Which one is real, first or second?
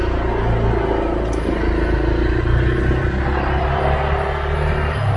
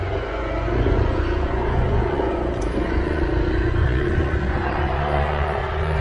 first